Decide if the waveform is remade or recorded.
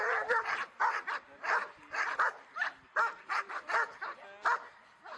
recorded